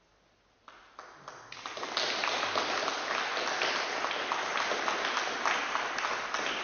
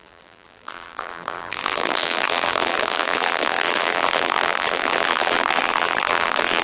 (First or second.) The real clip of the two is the first